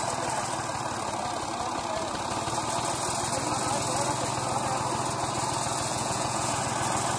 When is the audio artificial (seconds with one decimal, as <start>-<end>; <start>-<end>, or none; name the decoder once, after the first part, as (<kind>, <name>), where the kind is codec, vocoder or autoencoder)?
5.9-6.6 (vocoder, Vocos)